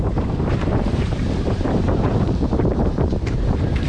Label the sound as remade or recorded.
remade